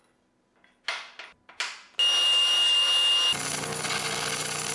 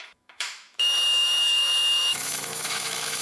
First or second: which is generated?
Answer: second